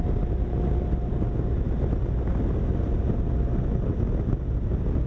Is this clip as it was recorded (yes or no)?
yes